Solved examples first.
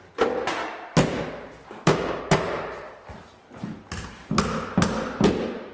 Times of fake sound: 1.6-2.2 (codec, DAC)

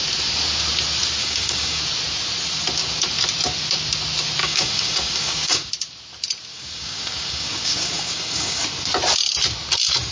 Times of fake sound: 1.2-1.8 (codec, DAC); 4.4-5.7; 6.5-8.6

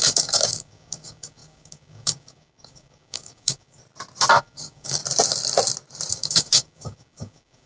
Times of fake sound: 0.0-3.8 (codec, DAC); 4.4-5.0; 6.1-7.7

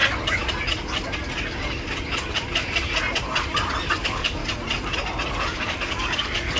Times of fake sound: 4.0-4.4 (codec, DAC); 5.3-6.6

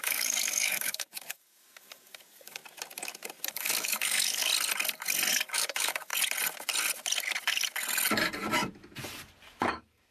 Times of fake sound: 0.0-2.6 (codec, DAC); 3.5-4.5; 5.3-6.1; 9.6-10.1

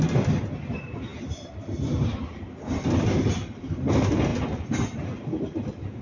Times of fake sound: none

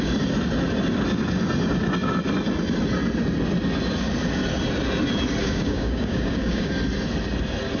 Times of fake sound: 5.4-6.7 (codec, DAC)